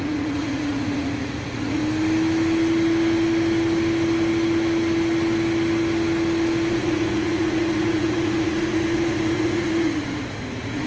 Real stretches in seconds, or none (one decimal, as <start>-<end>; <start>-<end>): 1.8-6.7